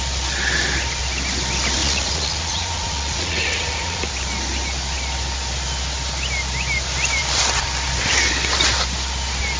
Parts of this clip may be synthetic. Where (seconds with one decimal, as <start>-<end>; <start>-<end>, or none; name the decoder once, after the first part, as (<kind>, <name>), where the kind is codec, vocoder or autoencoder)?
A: 1.8-4.1 (vocoder, Vocos)